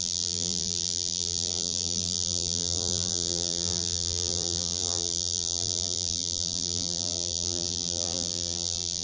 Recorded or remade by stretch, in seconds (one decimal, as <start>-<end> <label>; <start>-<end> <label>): 0.0-9.0 remade